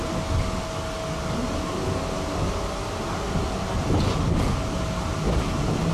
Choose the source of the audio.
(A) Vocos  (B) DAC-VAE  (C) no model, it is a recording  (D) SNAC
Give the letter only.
C